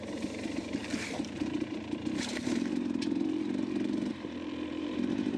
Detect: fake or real fake